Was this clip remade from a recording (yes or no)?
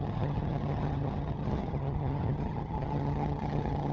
yes